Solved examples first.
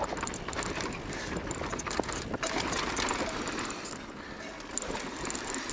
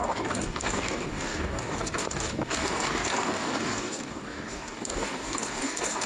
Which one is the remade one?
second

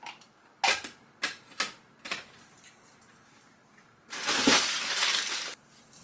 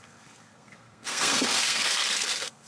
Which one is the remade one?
second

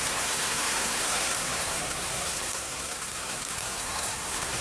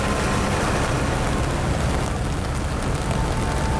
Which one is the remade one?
first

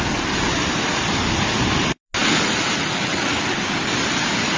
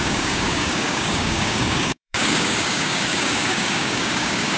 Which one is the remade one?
second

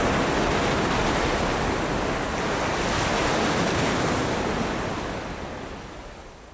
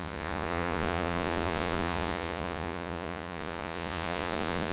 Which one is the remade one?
second